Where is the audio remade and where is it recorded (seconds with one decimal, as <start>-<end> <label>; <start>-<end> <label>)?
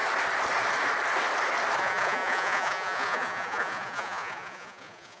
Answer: 0.0-1.8 recorded; 1.8-5.2 remade